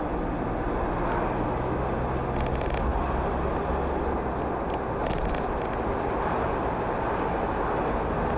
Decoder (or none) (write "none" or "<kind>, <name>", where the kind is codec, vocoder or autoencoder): none